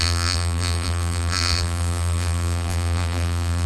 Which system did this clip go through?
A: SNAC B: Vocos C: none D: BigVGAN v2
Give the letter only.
D